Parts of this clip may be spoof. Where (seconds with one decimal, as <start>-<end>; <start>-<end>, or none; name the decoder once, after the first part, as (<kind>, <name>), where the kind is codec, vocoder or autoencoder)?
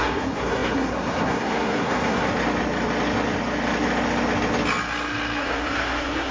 0.0-2.3 (codec, SNAC); 5.4-6.3